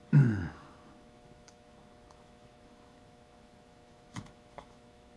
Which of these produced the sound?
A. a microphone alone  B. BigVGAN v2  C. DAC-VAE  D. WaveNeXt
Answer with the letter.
C